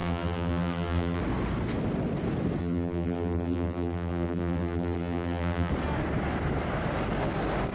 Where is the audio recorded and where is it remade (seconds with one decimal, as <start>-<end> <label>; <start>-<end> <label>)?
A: 0.0-1.2 remade; 1.2-2.6 recorded; 2.6-5.7 remade; 5.7-7.7 recorded